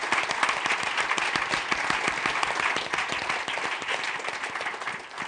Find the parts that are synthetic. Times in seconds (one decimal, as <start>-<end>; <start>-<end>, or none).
none